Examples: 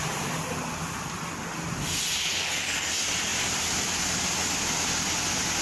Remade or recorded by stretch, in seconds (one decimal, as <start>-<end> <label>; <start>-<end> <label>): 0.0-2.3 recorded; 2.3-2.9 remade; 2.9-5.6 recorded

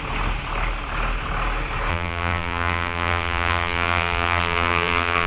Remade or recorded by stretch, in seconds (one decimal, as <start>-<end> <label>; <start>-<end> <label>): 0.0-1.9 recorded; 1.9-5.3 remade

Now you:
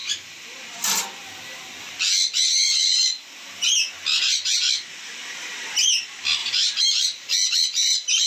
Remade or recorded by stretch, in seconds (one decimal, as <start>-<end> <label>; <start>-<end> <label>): 0.0-0.6 remade; 0.6-6.4 recorded; 6.4-8.3 remade